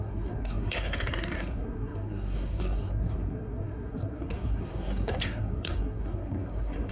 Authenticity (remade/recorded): remade